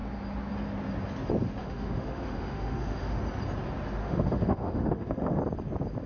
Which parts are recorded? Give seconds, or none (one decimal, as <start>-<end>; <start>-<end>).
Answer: 0.0-1.6; 3.2-4.0; 5.4-6.1